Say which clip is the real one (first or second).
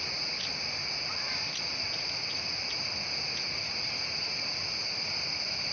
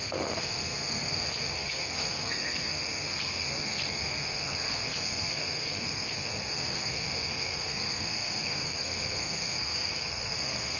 first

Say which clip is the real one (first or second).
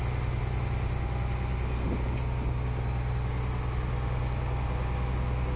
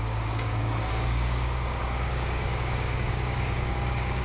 first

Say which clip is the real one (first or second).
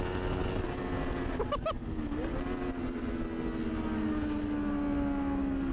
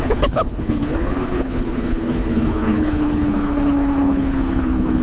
first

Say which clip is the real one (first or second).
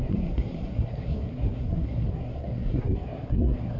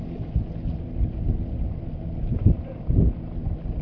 second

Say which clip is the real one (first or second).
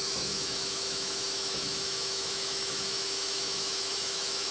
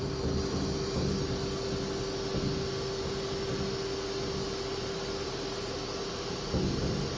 second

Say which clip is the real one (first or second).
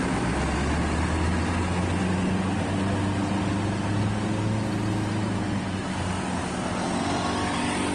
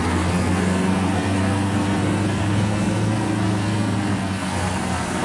first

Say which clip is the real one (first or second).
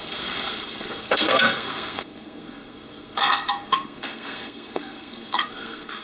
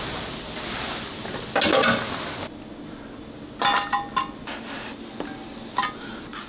second